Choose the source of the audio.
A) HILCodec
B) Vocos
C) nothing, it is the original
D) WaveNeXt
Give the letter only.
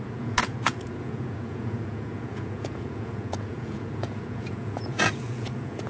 B